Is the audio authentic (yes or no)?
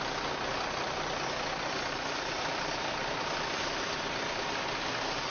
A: no